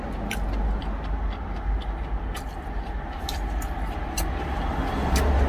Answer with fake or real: real